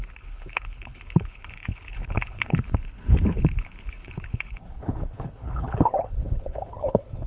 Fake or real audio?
fake